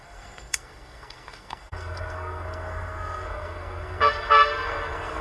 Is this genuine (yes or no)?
no